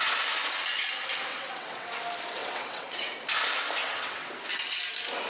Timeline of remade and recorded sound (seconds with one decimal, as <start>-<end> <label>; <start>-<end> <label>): 0.0-1.3 recorded; 1.3-1.9 remade; 1.9-2.4 recorded; 2.4-3.1 remade; 3.1-3.8 recorded; 3.8-4.3 remade; 4.3-5.3 recorded